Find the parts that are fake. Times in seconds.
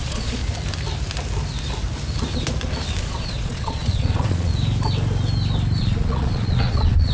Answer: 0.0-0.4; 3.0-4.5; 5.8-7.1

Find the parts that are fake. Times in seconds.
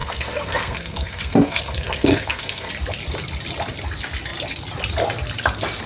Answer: 0.0-2.7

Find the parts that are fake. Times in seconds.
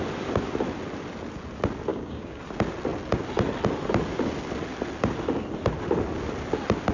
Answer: 1.9-2.4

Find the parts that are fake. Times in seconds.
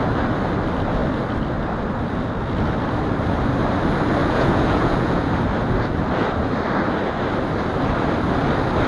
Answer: 4.2-5.3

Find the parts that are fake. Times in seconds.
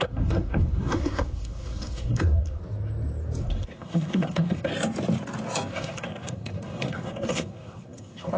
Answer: 0.0-2.6; 3.4-4.7; 5.7-8.4